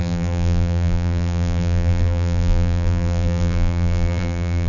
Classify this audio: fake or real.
fake